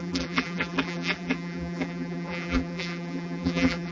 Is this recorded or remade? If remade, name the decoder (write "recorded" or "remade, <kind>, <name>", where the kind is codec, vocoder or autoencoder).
remade, vocoder, BigVGAN v2